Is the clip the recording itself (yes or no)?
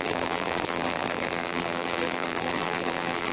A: no